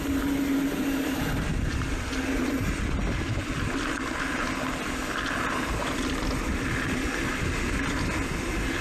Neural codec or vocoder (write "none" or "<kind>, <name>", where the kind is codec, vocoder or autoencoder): none